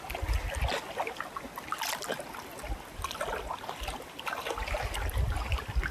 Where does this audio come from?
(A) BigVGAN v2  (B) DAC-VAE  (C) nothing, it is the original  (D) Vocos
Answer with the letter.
C